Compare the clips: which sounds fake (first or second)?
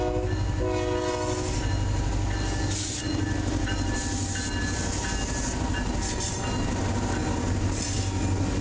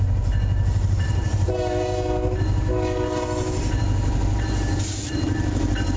second